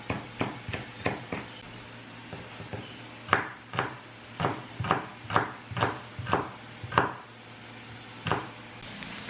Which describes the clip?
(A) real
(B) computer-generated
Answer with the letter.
A